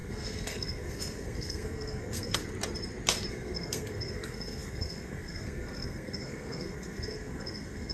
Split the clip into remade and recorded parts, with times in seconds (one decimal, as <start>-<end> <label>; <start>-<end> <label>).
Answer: 0.0-2.4 remade; 2.4-3.3 recorded; 3.3-7.9 remade